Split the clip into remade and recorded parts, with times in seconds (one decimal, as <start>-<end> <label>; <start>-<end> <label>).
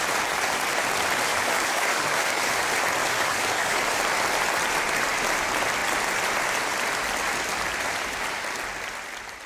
0.0-1.3 recorded; 1.3-2.5 remade; 2.5-3.0 recorded; 3.0-3.9 remade; 3.9-9.5 recorded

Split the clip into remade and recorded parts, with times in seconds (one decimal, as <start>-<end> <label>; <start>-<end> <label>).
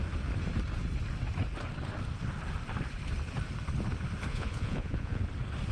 0.0-4.3 recorded; 4.3-5.2 remade; 5.2-5.7 recorded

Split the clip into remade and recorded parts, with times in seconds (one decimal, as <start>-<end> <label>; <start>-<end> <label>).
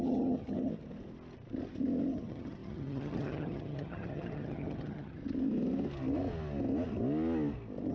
0.0-0.7 remade; 0.7-2.1 recorded; 2.1-5.2 remade; 5.2-7.9 recorded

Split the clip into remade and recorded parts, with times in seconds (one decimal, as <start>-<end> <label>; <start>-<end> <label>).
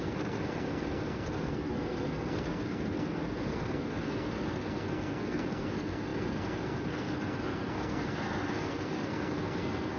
0.0-10.0 remade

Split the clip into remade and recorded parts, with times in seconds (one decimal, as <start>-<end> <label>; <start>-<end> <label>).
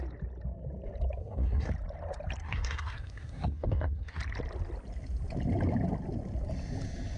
0.0-1.2 recorded; 1.2-1.7 remade; 1.7-2.4 recorded; 2.4-4.2 remade; 4.2-7.2 recorded